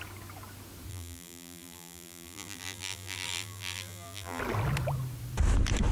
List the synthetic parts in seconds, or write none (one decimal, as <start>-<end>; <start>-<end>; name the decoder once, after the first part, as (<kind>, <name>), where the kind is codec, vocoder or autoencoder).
0.9-4.4 (vocoder, BigVGAN v2)